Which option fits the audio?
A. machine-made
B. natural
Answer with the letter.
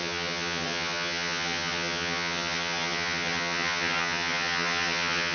A